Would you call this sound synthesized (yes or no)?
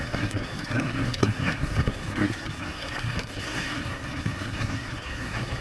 yes